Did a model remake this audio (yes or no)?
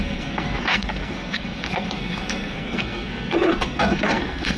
yes